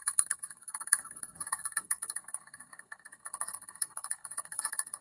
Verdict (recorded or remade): remade